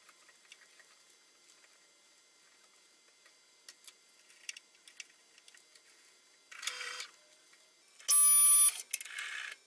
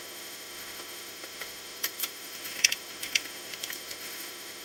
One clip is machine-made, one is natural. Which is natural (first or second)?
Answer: first